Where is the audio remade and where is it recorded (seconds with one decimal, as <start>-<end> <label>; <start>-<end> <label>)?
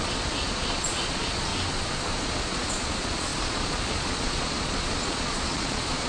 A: 0.0-1.5 remade; 1.5-2.2 recorded; 2.2-6.1 remade